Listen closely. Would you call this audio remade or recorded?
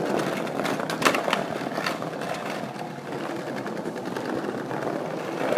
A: recorded